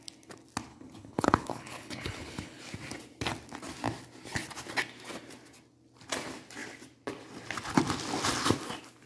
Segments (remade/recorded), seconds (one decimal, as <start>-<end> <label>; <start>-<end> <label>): 0.0-0.7 recorded; 0.7-2.6 remade; 2.6-9.1 recorded